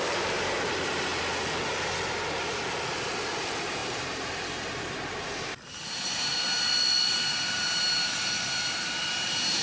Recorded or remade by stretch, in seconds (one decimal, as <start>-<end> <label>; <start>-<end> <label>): 0.0-1.1 remade; 1.1-3.3 recorded; 3.3-6.3 remade; 6.3-7.1 recorded; 7.1-9.6 remade